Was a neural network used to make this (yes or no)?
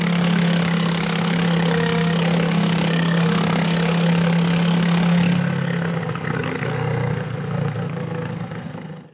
yes